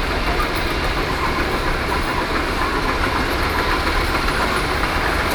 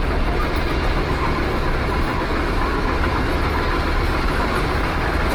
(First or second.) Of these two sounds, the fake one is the first